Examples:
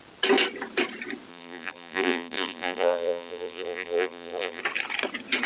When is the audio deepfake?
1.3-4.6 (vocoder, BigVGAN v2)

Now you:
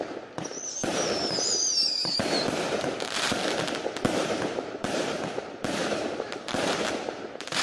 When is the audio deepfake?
0.0-3.4 (vocoder, BigVGAN v2); 4.2-7.6

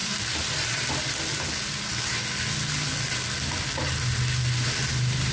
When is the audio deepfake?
0.0-0.9 (vocoder, BigVGAN v2)

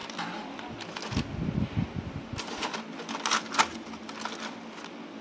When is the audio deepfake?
0.0-3.1 (vocoder, BigVGAN v2)

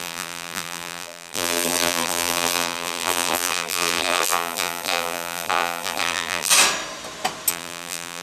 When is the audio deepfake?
0.0-6.5 (vocoder, BigVGAN v2); 7.5-8.2

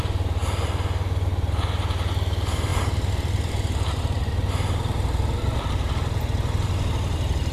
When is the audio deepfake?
none